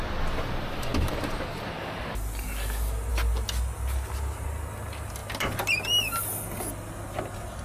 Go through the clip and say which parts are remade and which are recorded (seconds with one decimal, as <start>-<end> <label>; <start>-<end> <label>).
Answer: 0.0-7.6 recorded